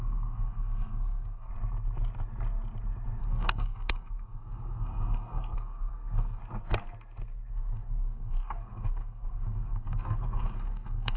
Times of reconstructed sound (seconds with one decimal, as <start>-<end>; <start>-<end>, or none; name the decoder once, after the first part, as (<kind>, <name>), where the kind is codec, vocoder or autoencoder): 0.0-1.5 (codec, SNAC); 3.2-6.4; 7.5-11.2